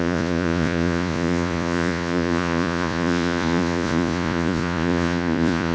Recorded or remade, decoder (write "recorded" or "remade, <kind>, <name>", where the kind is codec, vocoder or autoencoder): remade, vocoder, Vocos